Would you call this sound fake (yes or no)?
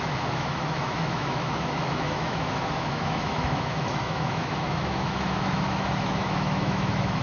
yes